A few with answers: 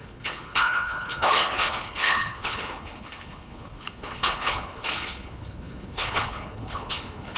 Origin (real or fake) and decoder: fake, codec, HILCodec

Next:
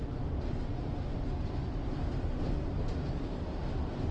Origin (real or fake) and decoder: real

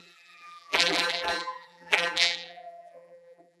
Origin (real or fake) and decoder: fake, vocoder, BigVGAN v2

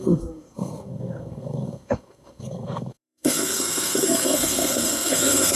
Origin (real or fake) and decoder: fake, codec, SNAC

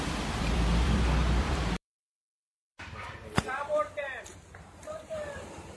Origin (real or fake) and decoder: fake, vocoder, BigVGAN v2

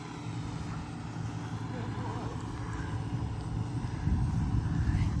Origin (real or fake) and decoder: real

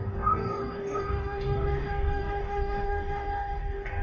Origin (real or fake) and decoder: fake, codec, DAC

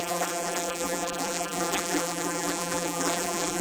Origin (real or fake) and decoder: fake, vocoder, BigVGAN v2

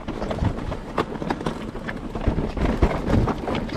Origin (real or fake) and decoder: real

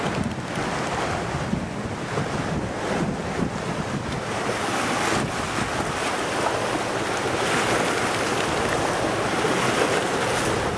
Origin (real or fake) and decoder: real